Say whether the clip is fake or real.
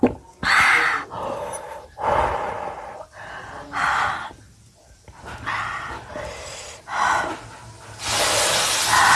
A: real